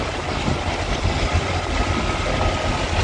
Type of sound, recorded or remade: recorded